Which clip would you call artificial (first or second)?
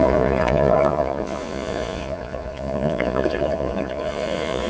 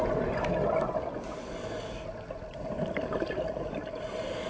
first